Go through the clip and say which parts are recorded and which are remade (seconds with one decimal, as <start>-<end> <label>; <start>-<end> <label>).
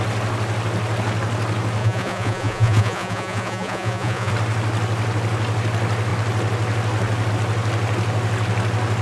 0.0-1.8 recorded; 1.8-4.3 remade; 4.3-9.0 recorded